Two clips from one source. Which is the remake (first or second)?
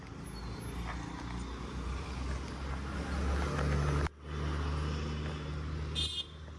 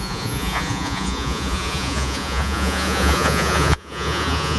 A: second